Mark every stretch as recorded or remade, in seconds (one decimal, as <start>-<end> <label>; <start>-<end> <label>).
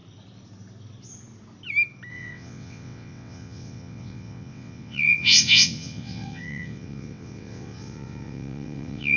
0.0-2.1 recorded; 2.1-9.2 remade